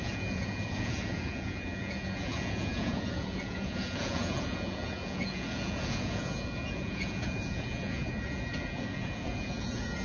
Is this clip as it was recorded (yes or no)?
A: no